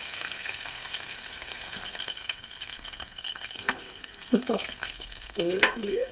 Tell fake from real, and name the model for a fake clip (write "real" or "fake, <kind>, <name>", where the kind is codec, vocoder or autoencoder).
fake, codec, SNAC